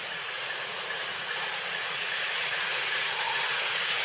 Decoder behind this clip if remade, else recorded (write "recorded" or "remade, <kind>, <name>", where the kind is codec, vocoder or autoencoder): remade, vocoder, Vocos